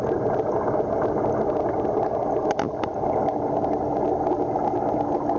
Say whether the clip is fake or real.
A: real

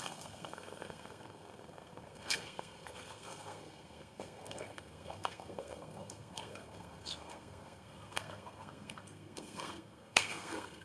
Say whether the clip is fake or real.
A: fake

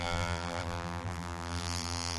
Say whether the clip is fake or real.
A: fake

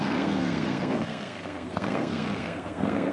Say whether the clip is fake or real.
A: fake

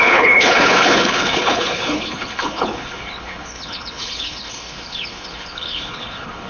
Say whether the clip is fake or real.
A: fake